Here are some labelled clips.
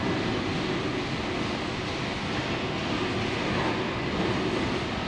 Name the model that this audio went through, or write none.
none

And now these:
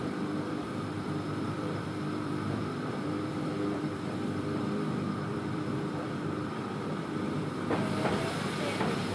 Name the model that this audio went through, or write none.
vocoder, BigVGAN v2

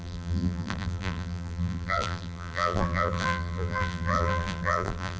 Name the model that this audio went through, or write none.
vocoder, BigVGAN v2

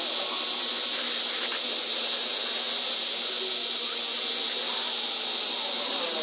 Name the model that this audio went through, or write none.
none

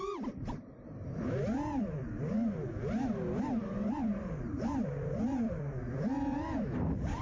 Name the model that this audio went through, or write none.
vocoder, BigVGAN v2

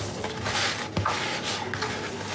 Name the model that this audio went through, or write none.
none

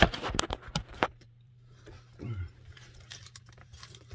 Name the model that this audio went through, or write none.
vocoder, BigVGAN v2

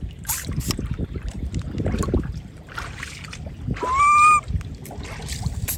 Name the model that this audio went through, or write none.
none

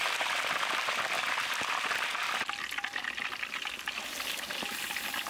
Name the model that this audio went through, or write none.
none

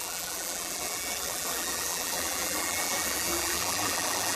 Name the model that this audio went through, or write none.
vocoder, BigVGAN v2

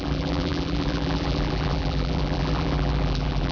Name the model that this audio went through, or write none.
vocoder, BigVGAN v2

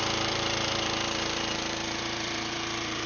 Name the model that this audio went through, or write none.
vocoder, BigVGAN v2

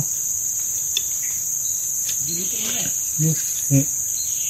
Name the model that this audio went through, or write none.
none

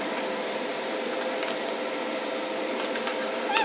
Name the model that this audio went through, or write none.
none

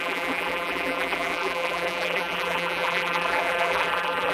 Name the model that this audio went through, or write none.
vocoder, BigVGAN v2